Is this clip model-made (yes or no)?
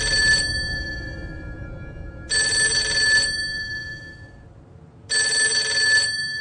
no